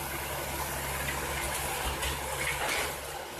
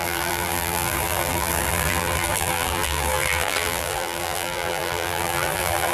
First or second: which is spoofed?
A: second